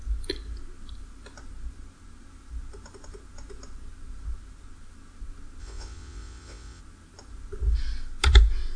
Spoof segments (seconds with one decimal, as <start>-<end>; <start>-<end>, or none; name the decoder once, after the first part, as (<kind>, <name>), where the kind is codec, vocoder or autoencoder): 5.6-6.8 (vocoder, WaveNeXt)